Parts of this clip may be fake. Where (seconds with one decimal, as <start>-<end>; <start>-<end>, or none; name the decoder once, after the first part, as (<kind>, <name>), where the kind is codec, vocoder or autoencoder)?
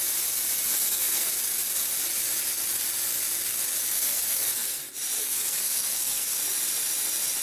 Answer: 0.7-1.3 (codec, SNAC); 3.8-4.8; 5.2-6.4